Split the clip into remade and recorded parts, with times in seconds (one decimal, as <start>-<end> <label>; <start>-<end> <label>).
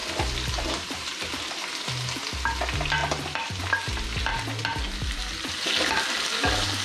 0.0-6.8 recorded